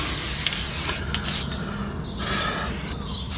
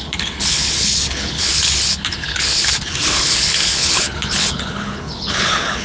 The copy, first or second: second